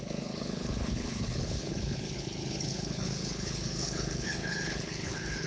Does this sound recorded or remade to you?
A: remade